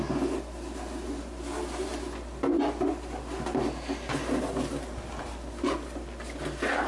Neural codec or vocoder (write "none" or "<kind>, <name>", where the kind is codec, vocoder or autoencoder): none